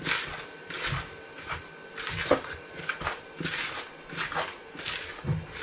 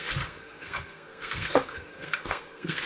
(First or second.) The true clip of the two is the first